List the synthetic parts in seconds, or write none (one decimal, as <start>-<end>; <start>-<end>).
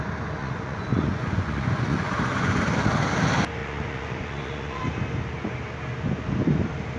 0.4-2.6; 3.6-4.8